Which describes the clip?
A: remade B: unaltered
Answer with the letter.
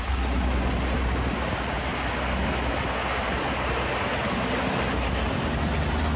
B